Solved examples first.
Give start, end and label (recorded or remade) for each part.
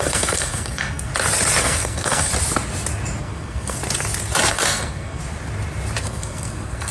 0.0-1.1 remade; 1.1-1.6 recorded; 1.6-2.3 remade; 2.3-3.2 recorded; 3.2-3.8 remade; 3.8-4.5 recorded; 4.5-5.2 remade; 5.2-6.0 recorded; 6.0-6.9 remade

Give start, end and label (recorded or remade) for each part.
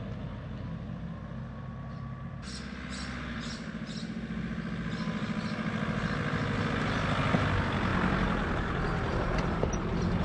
0.0-10.2 recorded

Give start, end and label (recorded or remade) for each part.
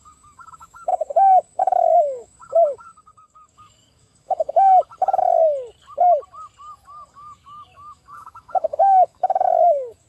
0.0-4.9 remade; 4.9-7.1 recorded; 7.1-10.1 remade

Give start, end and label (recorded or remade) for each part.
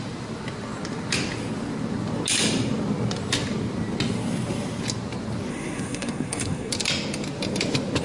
0.0-5.5 recorded; 5.5-6.7 remade; 6.7-8.0 recorded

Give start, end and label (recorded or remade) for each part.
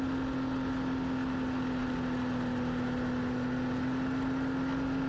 0.0-5.1 recorded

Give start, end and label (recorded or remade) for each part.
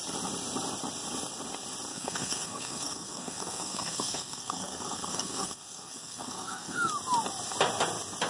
0.0-1.9 recorded; 1.9-6.9 remade; 6.9-8.3 recorded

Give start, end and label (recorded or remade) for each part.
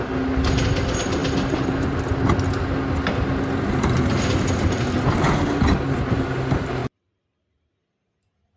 0.0-8.6 recorded